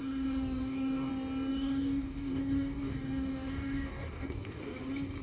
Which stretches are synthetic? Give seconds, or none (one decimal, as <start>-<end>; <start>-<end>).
0.0-1.1; 1.5-4.6